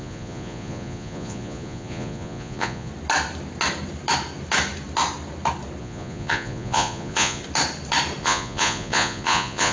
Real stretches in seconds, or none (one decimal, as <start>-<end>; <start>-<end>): 2.9-5.8; 7.4-8.2

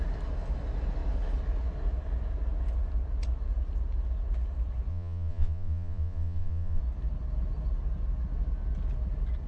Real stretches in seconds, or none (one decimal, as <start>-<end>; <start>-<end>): 0.0-4.9; 6.8-9.5

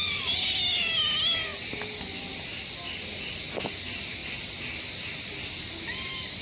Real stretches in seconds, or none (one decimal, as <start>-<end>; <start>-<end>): 0.0-6.4

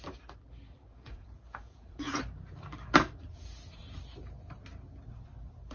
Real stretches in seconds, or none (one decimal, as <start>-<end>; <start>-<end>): 0.0-0.9; 2.2-5.7

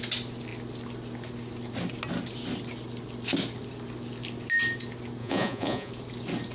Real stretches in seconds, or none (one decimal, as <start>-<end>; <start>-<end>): 0.0-5.2; 5.9-6.5

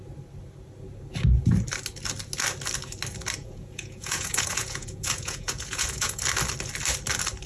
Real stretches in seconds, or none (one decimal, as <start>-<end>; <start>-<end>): 0.0-3.4; 6.2-7.5

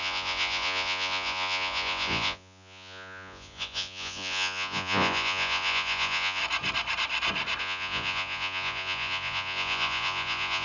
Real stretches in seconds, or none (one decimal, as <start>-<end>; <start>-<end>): 6.4-7.6